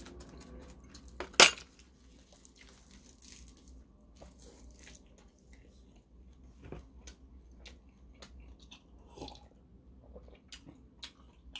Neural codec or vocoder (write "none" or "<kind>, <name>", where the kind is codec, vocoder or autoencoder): none